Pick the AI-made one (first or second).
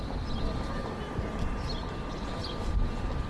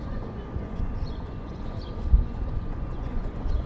second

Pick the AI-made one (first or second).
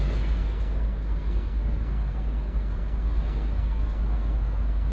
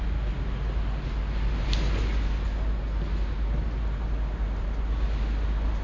first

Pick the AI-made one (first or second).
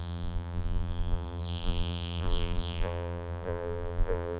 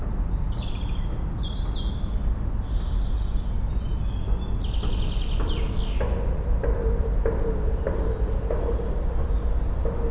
first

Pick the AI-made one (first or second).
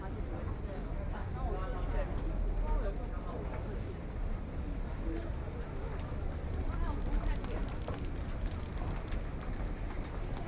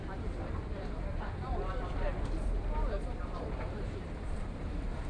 second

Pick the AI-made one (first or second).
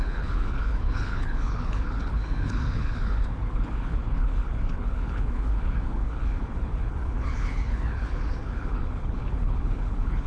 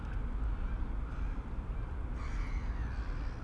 first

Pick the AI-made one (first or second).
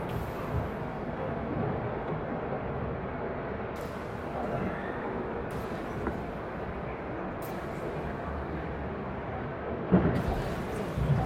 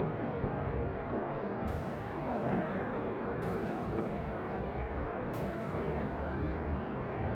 second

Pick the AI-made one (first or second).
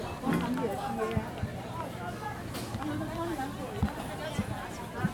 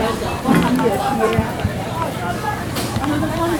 second